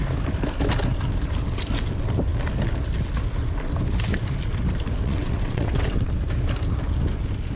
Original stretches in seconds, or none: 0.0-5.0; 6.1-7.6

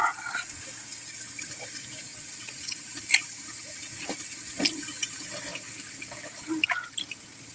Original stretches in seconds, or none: 0.0-2.1; 2.9-7.5